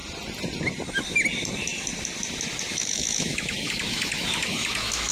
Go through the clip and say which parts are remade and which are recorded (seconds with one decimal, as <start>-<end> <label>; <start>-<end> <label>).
0.0-2.7 recorded; 2.7-5.1 remade